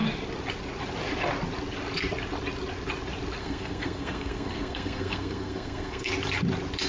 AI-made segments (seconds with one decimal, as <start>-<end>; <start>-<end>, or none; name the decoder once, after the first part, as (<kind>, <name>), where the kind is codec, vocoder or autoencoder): 3.4-6.1 (codec, SNAC)